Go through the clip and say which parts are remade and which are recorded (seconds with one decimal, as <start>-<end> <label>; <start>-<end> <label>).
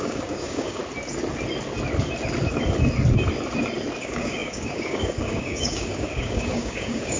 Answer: 0.0-0.8 remade; 0.8-4.0 recorded; 4.0-7.2 remade